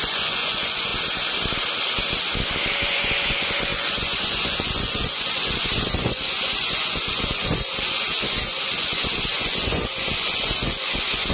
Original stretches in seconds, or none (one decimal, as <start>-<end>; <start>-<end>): 0.9-2.8